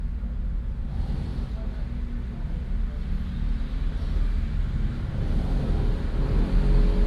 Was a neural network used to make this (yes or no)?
no